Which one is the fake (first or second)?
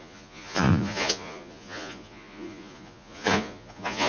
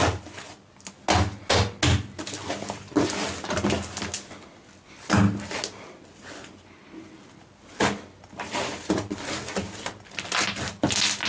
first